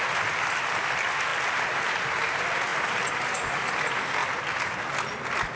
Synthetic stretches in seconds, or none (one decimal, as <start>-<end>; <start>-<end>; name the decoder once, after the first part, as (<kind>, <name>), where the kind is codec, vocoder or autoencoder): none